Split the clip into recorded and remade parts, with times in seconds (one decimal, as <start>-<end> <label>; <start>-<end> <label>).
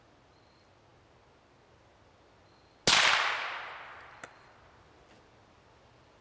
0.0-6.2 recorded